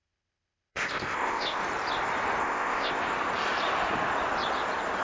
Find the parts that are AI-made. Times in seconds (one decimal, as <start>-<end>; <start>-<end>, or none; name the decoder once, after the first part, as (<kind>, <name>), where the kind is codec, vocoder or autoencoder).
0.0-1.6 (codec, ZipCodec); 2.4-3.0

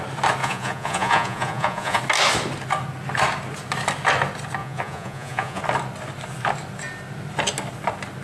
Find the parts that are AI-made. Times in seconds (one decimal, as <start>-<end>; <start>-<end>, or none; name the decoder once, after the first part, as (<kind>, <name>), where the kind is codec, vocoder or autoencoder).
0.4-2.0 (vocoder, Vocos); 4.6-5.6

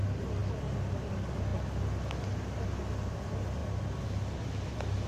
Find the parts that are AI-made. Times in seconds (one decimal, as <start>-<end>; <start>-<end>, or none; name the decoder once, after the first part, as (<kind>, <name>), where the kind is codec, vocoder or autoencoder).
none

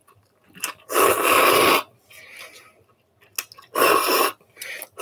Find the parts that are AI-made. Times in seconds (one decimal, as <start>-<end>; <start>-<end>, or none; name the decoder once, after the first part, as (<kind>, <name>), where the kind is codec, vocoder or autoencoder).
none

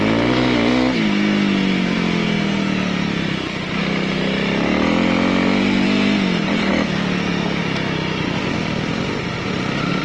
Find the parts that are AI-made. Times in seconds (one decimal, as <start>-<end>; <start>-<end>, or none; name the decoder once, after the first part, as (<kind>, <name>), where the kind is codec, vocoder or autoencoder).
none

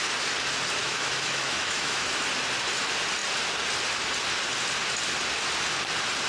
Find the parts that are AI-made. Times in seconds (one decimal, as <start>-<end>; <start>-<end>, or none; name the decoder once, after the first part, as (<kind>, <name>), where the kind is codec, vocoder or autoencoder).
0.8-2.1 (autoencoder, DAC-VAE)

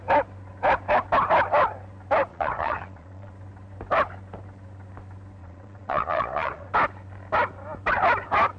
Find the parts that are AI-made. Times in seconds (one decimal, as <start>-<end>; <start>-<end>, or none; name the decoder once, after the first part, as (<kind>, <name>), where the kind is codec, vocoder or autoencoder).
2.3-3.3 (vocoder, Vocos); 5.4-6.7

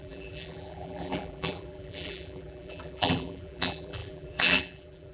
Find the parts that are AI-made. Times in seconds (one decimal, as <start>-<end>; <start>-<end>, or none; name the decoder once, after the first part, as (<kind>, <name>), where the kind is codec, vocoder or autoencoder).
0.0-5.1 (vocoder, BigVGAN v2)